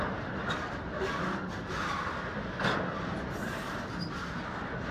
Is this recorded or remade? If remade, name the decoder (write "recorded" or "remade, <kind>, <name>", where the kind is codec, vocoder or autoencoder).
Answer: recorded